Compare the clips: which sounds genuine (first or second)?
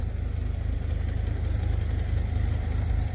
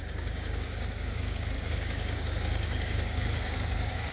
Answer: first